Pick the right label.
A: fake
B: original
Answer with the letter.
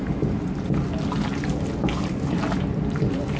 B